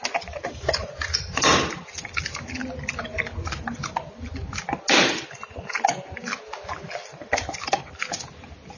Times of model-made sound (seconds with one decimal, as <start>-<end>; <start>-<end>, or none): none